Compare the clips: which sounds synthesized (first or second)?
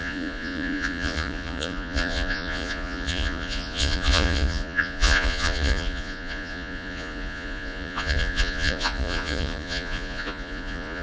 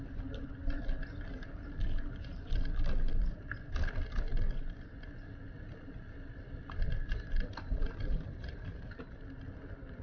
first